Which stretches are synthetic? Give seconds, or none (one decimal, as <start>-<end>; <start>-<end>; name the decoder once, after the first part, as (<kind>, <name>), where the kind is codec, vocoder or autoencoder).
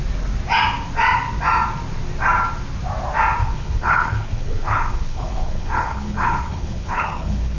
3.4-7.6 (codec, HILCodec)